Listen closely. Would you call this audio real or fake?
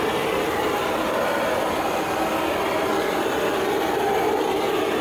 real